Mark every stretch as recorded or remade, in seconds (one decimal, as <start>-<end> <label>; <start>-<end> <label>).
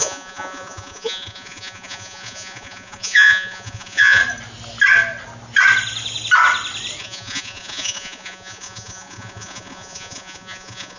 0.0-4.2 remade; 4.2-7.0 recorded; 7.0-11.0 remade